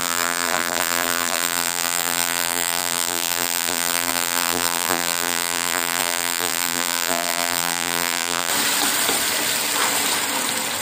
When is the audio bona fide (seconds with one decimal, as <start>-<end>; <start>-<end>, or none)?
8.5-10.8